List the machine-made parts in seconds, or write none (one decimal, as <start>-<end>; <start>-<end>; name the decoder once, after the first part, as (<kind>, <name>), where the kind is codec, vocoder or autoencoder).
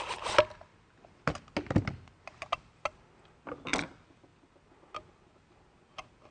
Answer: none